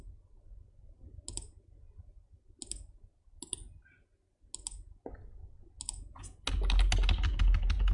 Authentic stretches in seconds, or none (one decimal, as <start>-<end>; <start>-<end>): 0.0-7.9